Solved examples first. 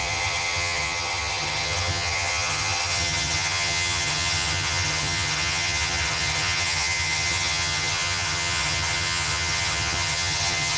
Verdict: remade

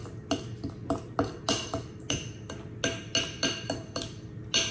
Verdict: recorded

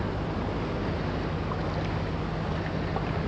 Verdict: recorded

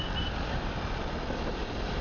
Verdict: recorded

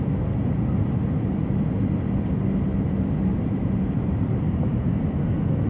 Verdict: recorded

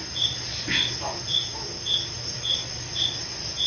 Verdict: recorded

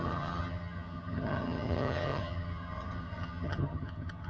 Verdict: remade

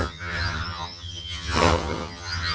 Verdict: remade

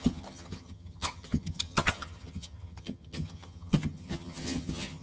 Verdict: remade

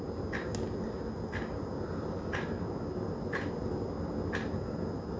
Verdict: recorded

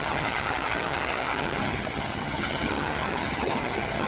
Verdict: remade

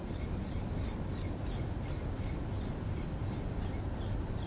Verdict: recorded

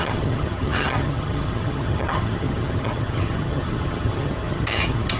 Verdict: remade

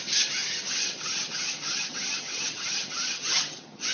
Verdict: remade